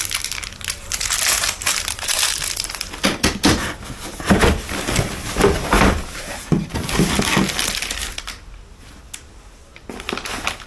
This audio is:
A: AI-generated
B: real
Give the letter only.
B